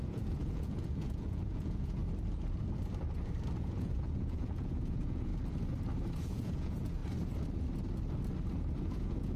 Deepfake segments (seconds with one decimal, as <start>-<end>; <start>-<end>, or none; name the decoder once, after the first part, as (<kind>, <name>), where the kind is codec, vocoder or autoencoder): 0.0-2.0 (vocoder, Vocos); 3.6-5.3; 6.2-7.0; 8.8-9.4